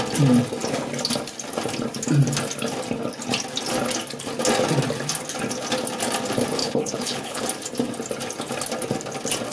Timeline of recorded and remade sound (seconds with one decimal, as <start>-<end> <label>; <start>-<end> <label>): 0.0-6.6 recorded; 6.6-7.4 remade; 7.4-9.5 recorded